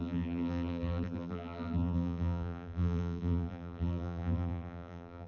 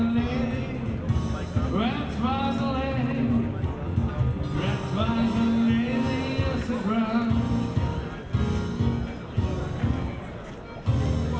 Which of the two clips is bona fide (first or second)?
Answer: second